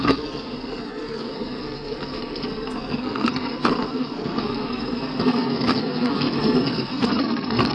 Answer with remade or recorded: remade